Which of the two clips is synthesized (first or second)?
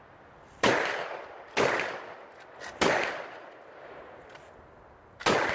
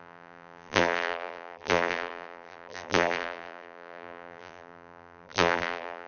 second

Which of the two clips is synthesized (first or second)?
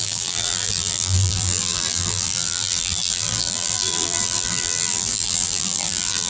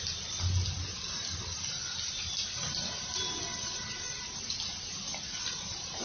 first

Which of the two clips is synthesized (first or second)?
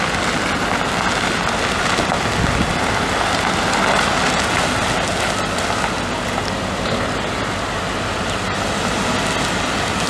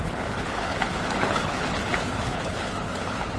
second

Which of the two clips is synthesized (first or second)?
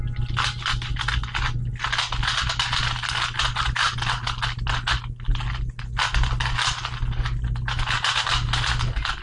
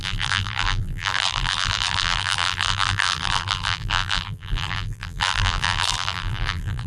second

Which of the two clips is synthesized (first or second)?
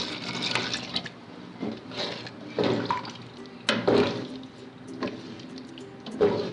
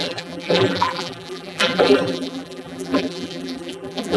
second